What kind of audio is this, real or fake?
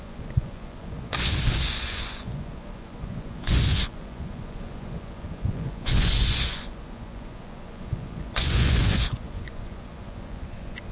fake